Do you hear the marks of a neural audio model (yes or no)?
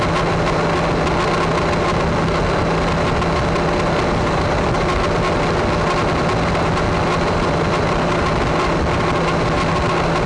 no